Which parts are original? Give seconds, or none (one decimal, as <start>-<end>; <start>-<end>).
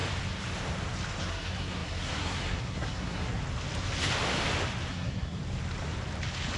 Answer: 0.0-1.2; 3.4-4.9; 5.4-6.6